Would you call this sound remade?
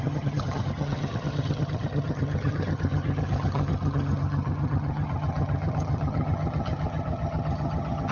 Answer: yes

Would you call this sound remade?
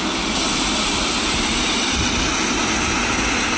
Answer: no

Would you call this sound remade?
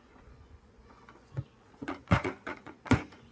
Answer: yes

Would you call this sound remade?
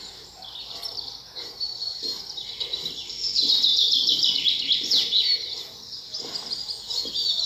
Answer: no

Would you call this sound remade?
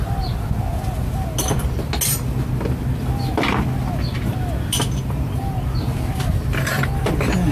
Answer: no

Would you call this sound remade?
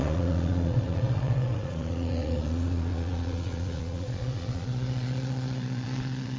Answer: yes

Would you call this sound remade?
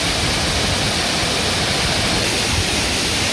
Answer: no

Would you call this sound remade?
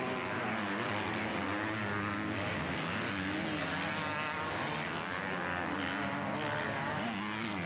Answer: no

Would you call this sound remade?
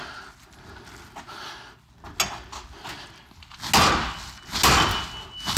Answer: no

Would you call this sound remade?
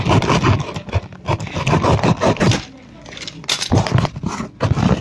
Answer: no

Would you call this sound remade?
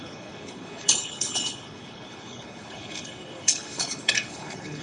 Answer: yes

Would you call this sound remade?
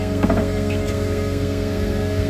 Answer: yes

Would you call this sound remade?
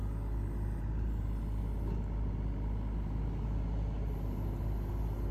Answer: no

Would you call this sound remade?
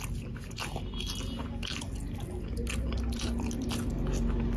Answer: no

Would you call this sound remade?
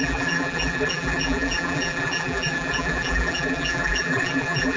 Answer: yes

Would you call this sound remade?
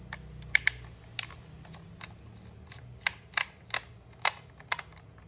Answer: no